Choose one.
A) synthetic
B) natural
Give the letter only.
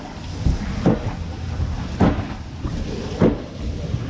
B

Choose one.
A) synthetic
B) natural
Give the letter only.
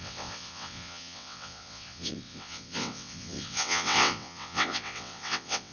A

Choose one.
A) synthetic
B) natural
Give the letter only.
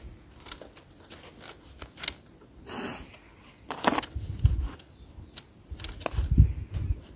B